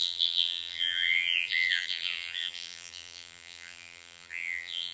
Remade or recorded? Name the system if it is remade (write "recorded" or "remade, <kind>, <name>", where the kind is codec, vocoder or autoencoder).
remade, vocoder, BigVGAN v2